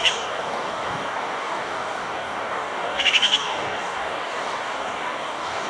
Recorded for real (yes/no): no